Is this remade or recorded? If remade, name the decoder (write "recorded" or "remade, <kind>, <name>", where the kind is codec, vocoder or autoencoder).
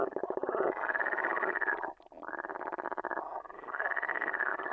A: remade, vocoder, BigVGAN v2